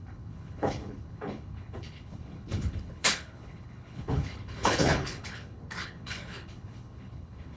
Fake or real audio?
fake